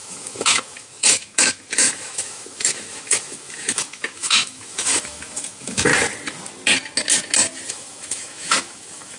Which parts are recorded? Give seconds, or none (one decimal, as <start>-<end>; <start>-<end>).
5.9-7.7